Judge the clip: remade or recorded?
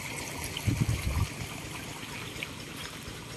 recorded